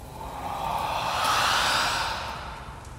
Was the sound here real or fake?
real